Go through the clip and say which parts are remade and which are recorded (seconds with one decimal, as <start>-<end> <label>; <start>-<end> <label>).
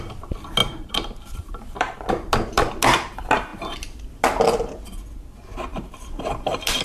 0.0-0.6 recorded; 0.6-2.1 remade; 2.1-5.7 recorded; 5.7-6.8 remade